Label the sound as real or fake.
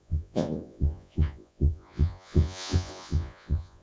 fake